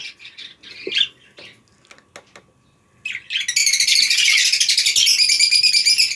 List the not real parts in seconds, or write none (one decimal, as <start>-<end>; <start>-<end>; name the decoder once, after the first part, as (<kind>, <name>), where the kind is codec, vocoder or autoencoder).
3.6-4.3 (vocoder, BigVGAN v2)